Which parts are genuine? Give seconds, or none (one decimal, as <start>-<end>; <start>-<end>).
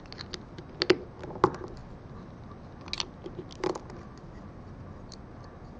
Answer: 0.0-5.8